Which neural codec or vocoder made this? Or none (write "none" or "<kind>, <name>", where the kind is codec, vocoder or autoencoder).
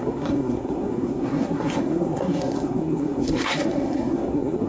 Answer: codec, SNAC